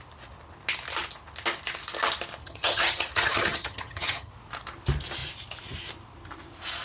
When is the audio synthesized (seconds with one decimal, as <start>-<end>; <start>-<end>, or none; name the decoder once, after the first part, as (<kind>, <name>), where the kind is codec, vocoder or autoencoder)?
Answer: 2.4-4.3 (vocoder, HiFi-GAN)